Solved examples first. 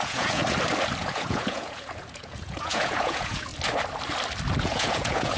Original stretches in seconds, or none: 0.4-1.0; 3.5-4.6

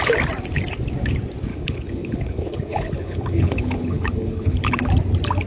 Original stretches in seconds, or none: 0.0-1.5; 4.8-5.5

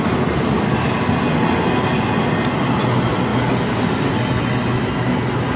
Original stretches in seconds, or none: 0.0-5.6

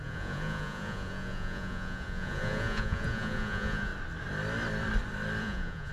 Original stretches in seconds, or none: 3.9-5.4

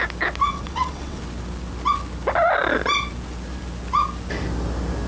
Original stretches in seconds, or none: 0.0-0.5; 1.2-5.1

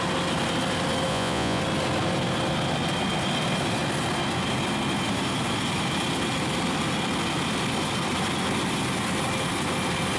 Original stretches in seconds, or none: 0.0-1.1; 1.6-10.2

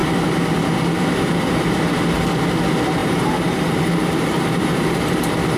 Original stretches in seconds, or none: 0.0-3.0

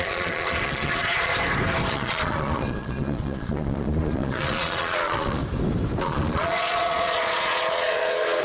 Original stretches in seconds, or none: 1.3-1.9; 5.4-6.0